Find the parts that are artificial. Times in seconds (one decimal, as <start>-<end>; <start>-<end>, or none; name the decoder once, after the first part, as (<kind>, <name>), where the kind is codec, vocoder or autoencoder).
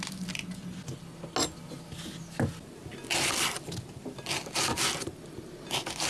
none